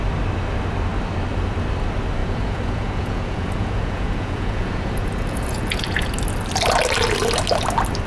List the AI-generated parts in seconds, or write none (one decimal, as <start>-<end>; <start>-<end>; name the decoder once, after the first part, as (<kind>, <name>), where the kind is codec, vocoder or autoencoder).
2.2-6.1 (vocoder, Vocos)